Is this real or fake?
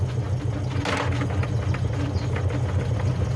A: real